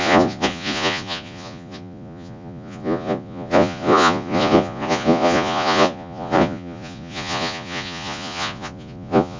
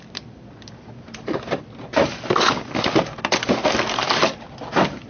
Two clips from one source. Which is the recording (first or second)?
second